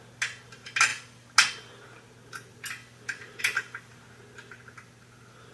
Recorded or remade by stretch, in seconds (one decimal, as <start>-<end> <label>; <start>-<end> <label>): 0.0-5.5 recorded